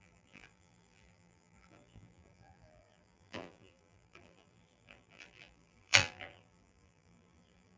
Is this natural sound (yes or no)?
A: no